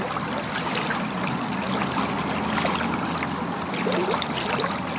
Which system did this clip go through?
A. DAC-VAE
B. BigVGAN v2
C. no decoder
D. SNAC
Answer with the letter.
C